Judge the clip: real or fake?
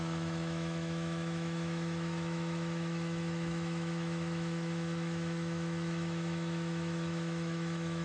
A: fake